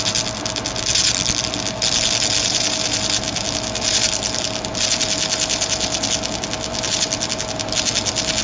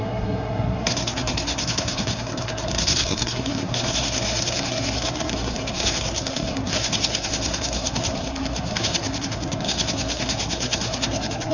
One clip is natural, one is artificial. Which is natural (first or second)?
first